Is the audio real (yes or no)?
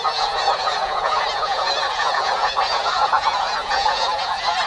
no